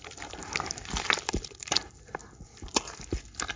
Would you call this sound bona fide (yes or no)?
yes